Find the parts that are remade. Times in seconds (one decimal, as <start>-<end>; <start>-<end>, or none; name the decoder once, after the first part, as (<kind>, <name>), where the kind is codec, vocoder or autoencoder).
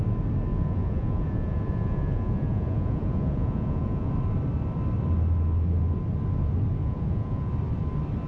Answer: 0.5-4.1 (vocoder, Vocos); 6.8-7.5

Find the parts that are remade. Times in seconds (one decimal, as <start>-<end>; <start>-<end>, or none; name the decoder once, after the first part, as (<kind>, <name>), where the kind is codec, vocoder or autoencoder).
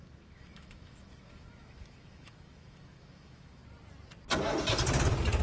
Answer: 0.0-3.6 (autoencoder, DAC-VAE)